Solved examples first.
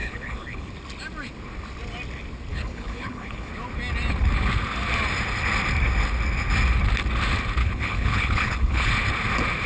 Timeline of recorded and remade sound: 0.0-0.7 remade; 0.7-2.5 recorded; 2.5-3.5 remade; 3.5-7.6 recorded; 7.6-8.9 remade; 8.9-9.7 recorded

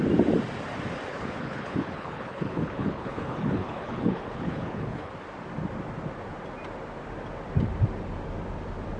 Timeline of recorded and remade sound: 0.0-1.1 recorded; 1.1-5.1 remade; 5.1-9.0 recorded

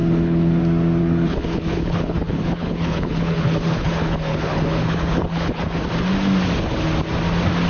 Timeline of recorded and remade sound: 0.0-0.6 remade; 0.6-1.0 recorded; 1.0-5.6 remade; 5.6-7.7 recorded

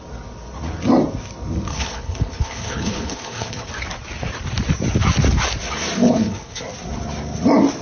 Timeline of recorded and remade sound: 0.0-1.7 recorded; 1.7-3.7 remade; 3.7-6.0 recorded; 6.0-6.6 remade; 6.6-7.8 recorded

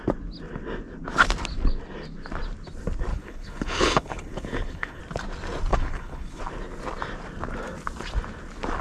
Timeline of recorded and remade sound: 0.0-3.1 recorded; 3.1-5.0 remade; 5.0-5.7 recorded; 5.7-6.4 remade; 6.4-8.8 recorded

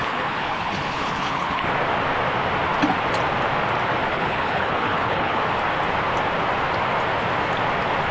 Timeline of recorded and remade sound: 0.0-1.7 remade; 1.7-4.1 recorded; 4.1-5.4 remade; 5.4-8.1 recorded

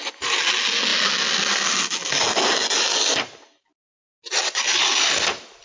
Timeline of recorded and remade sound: 0.0-5.6 recorded